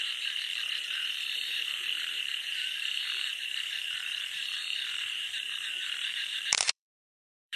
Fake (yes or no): yes